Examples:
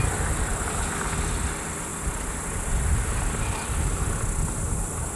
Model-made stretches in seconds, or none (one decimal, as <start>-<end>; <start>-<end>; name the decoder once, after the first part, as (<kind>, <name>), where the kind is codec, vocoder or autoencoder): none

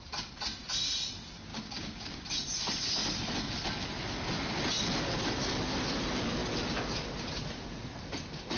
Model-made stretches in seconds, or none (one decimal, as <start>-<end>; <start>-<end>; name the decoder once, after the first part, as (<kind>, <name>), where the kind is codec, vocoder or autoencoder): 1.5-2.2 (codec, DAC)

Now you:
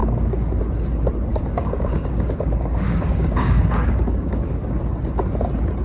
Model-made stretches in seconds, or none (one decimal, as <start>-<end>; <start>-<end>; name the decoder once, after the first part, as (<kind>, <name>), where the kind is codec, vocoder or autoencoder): 0.0-0.6 (codec, DAC); 1.3-4.8